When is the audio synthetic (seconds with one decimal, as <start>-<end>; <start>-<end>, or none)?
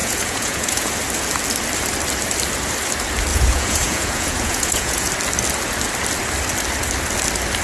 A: 0.0-0.9; 3.3-5.1